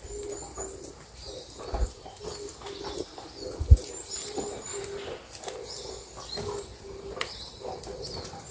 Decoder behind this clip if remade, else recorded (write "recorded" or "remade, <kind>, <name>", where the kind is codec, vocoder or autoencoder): recorded